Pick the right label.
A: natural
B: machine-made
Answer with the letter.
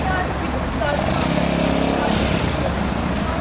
A